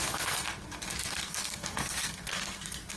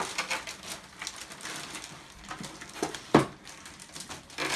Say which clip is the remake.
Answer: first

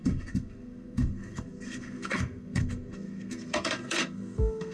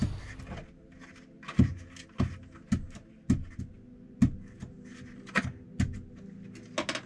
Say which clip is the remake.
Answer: first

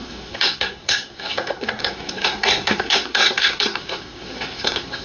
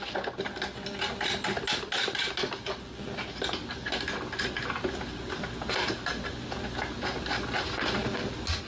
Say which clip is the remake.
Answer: first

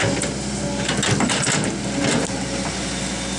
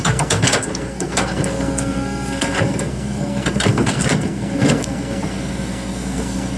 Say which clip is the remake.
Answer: second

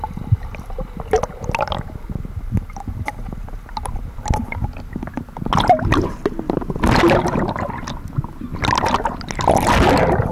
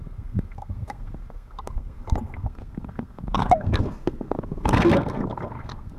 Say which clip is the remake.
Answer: second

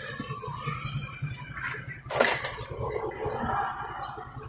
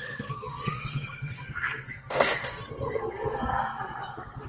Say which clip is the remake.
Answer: second